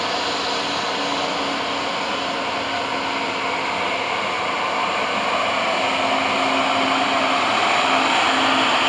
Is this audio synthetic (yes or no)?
no